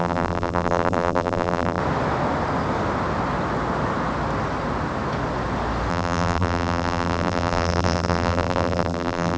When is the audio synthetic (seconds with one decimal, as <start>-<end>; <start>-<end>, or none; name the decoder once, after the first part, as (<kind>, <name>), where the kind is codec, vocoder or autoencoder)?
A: 0.0-1.8 (vocoder, BigVGAN v2); 5.9-9.4